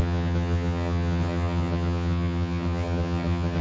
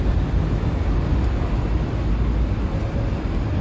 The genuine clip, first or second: second